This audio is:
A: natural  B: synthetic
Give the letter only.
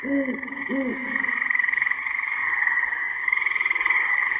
B